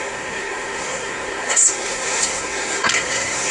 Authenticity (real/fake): fake